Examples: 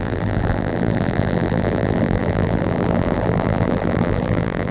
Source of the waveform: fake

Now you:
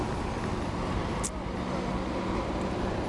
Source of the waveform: real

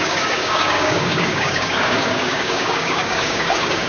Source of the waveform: fake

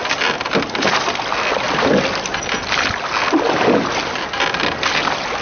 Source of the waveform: real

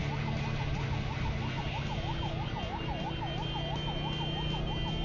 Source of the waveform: real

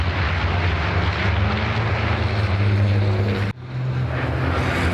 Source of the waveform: real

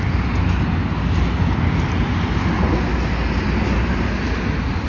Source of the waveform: real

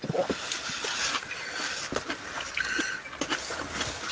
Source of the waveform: real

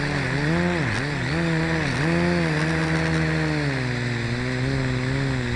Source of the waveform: real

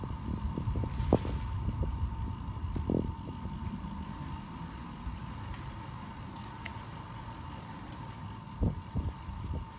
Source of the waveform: real